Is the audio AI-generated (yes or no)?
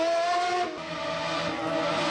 no